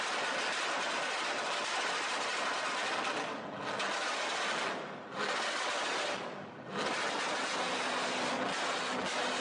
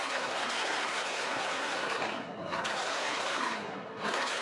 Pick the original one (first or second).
first